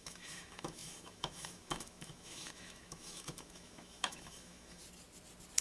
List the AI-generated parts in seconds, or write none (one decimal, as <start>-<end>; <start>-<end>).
0.0-4.8